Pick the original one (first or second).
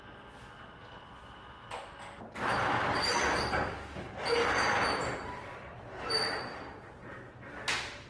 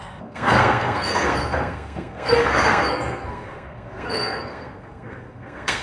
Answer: first